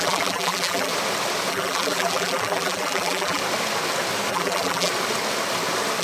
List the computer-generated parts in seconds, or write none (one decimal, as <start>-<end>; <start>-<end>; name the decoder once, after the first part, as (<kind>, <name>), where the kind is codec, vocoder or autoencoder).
0.0-0.9 (vocoder, BigVGAN v2); 1.5-3.4; 4.3-4.9